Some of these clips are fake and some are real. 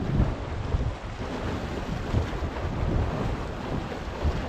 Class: real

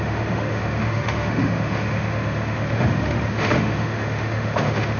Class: fake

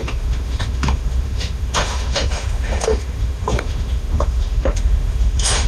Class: fake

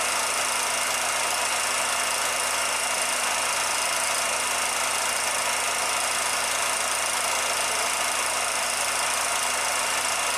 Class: real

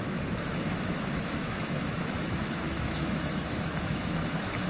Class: fake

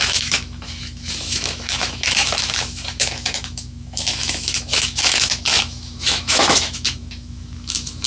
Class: fake